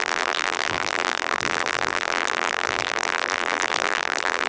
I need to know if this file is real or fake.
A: fake